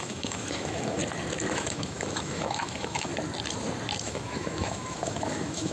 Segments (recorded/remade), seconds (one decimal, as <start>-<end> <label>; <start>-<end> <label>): 0.0-1.0 remade; 1.0-1.5 recorded; 1.5-3.1 remade; 3.1-4.0 recorded; 4.0-5.7 remade